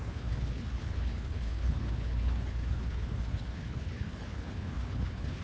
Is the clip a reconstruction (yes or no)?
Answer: yes